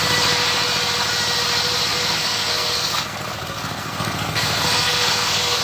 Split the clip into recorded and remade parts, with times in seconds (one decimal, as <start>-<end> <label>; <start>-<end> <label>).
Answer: 0.0-1.9 recorded; 1.9-5.6 remade